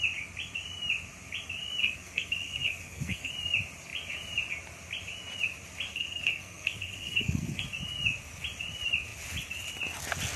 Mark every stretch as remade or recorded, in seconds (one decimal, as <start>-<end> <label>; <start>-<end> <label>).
0.0-1.8 recorded; 1.8-3.3 remade; 3.3-5.9 recorded; 5.9-7.6 remade; 7.6-10.4 recorded